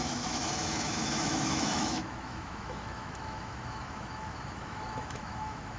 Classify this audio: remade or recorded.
remade